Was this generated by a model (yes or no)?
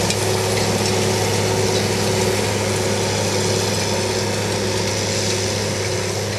no